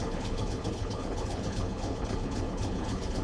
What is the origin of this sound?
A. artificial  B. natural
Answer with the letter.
A